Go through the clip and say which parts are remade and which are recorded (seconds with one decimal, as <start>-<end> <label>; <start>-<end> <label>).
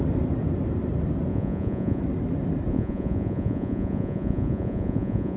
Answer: 0.0-1.3 recorded; 1.3-2.0 remade; 2.0-2.7 recorded; 2.7-5.4 remade